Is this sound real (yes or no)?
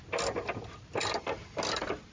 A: yes